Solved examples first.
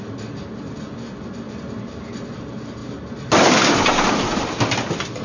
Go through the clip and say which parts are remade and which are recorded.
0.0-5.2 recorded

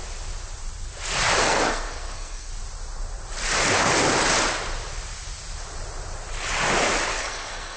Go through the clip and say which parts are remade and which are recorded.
0.0-1.4 recorded; 1.4-2.5 remade; 2.5-7.1 recorded; 7.1-7.8 remade

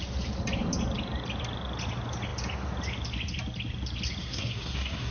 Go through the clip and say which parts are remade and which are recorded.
0.0-4.2 recorded; 4.2-5.1 remade

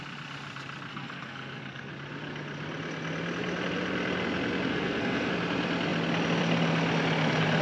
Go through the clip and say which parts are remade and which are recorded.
0.0-0.9 recorded; 0.9-1.9 remade; 1.9-4.7 recorded; 4.7-5.3 remade; 5.3-7.6 recorded

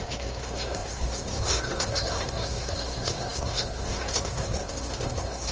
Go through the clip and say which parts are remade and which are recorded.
0.0-5.5 remade

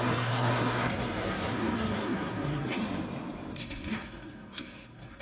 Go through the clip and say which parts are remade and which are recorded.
0.0-2.8 remade; 2.8-3.6 recorded; 3.6-5.2 remade

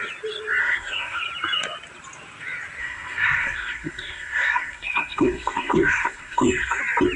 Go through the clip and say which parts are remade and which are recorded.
0.0-0.6 recorded; 0.6-1.2 remade; 1.2-2.8 recorded; 2.8-6.8 remade; 6.8-7.2 recorded

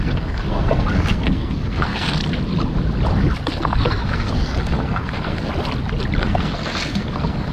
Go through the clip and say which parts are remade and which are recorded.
0.0-2.2 remade; 2.2-3.5 recorded; 3.5-5.5 remade; 5.5-6.2 recorded; 6.2-7.5 remade